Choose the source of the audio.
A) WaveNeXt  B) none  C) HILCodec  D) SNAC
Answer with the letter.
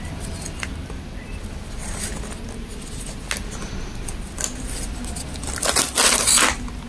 B